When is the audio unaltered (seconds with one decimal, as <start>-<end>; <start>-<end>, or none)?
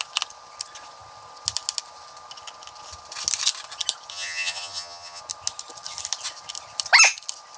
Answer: 0.0-4.1; 5.2-7.6